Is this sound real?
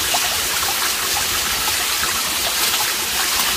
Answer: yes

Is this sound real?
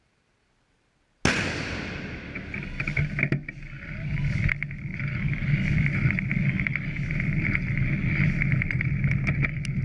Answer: yes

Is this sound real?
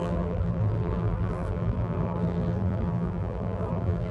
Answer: no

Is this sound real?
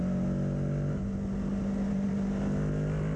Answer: yes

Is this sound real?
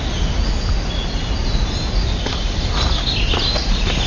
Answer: yes